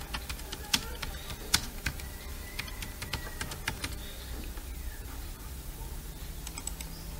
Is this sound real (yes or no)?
yes